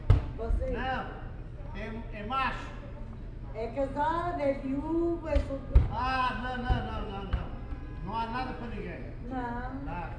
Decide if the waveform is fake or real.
real